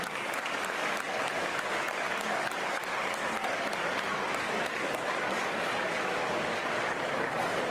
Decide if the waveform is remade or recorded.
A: remade